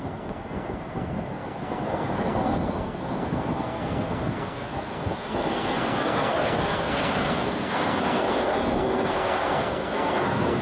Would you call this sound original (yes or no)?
no